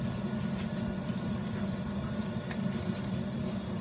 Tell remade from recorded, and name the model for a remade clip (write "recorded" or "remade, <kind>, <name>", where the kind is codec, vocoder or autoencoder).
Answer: recorded